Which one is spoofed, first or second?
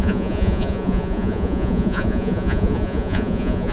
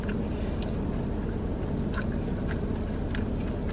first